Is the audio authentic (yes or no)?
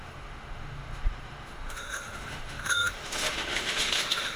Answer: no